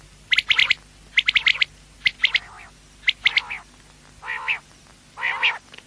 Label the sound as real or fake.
real